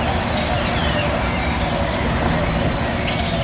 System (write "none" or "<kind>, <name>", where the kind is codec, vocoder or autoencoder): none